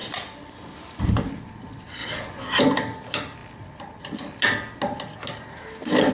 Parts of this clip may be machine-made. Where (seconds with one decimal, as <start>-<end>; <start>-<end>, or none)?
0.0-1.1; 2.0-2.6

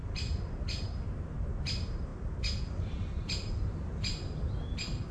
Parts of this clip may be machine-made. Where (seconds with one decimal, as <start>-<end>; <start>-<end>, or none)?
none

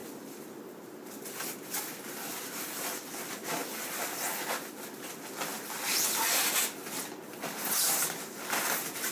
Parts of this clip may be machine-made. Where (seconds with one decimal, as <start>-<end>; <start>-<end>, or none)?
none

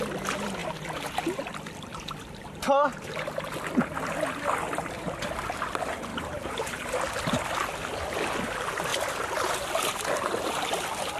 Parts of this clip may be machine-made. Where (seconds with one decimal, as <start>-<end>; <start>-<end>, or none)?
0.6-1.9; 6.1-7.4

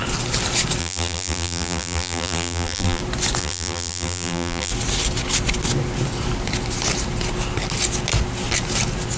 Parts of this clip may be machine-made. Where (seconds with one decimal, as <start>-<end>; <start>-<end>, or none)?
0.8-3.0; 3.4-4.7